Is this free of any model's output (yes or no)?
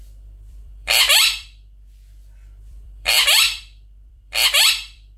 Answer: no